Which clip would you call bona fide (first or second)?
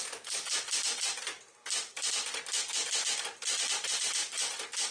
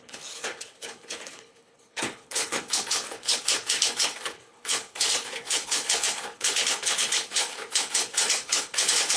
first